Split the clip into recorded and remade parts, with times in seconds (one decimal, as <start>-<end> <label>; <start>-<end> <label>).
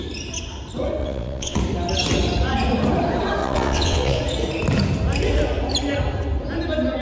0.0-1.0 recorded; 1.0-1.6 remade; 1.6-3.4 recorded; 3.4-4.2 remade; 4.2-7.0 recorded